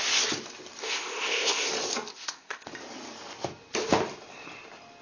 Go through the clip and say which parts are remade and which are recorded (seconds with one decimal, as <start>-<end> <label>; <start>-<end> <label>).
0.0-0.8 recorded; 0.8-1.7 remade; 1.7-2.1 recorded; 2.1-2.7 remade; 2.7-5.0 recorded